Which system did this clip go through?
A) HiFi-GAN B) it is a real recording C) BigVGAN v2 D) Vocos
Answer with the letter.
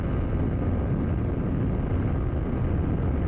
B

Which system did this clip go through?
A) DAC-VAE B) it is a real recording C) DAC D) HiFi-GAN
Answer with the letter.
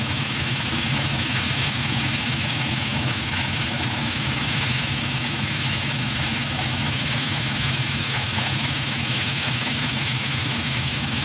A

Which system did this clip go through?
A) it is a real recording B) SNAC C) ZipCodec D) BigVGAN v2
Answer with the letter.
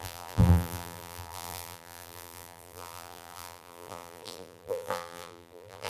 D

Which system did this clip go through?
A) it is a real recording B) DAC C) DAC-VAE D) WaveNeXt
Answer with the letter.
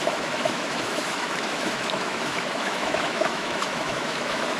C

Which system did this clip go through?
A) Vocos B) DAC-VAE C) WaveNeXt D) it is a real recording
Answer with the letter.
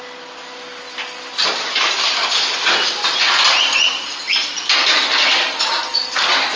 D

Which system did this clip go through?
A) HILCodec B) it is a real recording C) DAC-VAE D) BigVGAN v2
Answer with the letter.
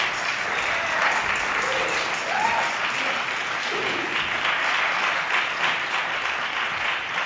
B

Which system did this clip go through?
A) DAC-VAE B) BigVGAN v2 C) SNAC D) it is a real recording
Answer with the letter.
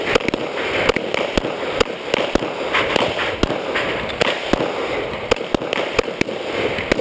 D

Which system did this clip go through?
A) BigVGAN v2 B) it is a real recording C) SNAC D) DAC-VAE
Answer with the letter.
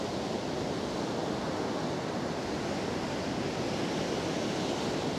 B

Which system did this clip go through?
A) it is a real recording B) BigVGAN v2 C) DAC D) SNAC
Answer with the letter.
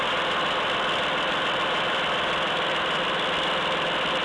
A